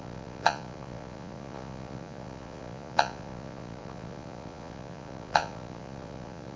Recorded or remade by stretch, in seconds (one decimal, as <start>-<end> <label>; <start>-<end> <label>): 0.0-6.6 remade